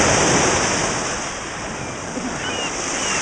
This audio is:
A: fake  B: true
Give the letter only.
B